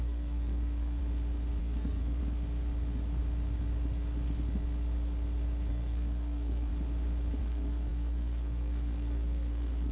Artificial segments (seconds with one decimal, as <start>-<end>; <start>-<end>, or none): 0.0-1.0; 1.6-2.2; 5.7-6.7; 7.4-9.9